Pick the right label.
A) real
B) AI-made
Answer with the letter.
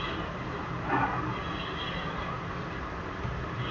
A